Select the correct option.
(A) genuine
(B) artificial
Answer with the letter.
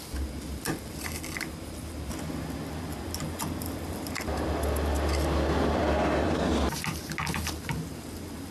A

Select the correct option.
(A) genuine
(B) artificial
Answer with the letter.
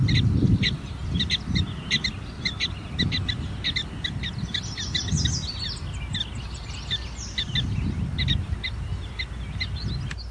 A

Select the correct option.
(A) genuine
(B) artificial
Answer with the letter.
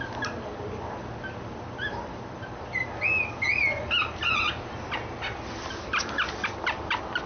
A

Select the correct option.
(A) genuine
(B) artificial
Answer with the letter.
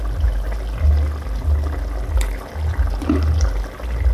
A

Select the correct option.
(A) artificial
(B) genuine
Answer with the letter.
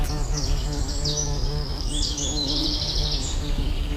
A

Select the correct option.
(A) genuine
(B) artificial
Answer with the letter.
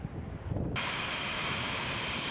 B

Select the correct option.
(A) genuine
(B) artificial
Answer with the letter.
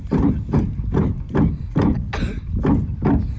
A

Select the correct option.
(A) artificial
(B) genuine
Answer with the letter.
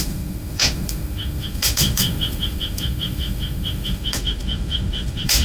A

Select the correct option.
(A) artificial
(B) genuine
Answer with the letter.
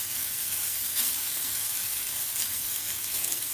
A